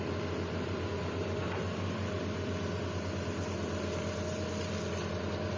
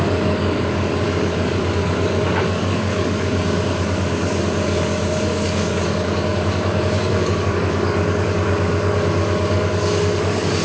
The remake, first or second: second